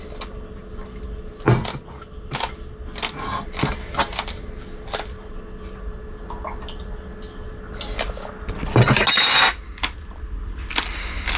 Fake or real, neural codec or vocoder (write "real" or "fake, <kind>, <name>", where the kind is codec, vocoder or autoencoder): real